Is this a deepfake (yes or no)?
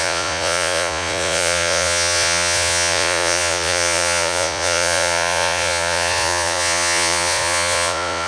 yes